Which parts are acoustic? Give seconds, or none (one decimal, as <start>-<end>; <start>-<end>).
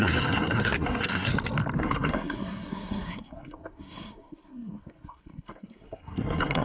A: 1.3-1.8